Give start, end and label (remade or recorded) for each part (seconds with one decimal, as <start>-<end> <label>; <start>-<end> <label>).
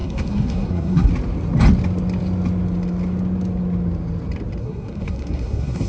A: 0.0-1.1 remade; 1.1-4.6 recorded; 4.6-5.9 remade